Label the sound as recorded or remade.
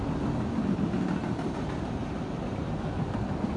recorded